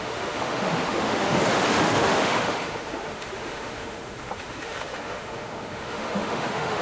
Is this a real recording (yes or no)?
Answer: no